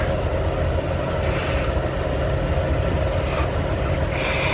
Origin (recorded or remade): recorded